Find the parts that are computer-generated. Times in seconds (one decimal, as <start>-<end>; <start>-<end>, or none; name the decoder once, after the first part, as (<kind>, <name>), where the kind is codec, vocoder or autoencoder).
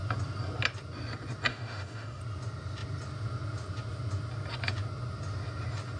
1.5-2.2 (autoencoder, DAC-VAE)